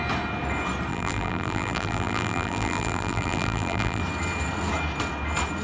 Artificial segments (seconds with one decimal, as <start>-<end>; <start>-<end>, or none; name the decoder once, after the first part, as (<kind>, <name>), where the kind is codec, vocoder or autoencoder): 0.9-4.0 (vocoder, BigVGAN v2)